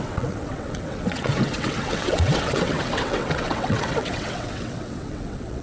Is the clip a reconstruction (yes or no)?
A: yes